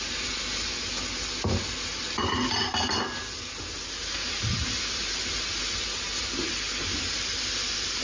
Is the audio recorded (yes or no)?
yes